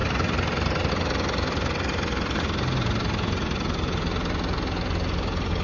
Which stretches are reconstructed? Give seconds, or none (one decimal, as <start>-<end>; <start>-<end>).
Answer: 0.0-0.9